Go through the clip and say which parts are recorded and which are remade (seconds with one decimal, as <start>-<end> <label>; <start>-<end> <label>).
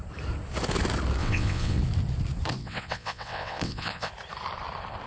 0.0-1.2 recorded; 1.2-1.8 remade; 1.8-2.6 recorded; 2.6-4.1 remade; 4.1-5.1 recorded